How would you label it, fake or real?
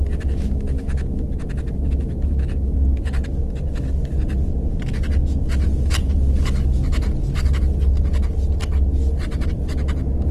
real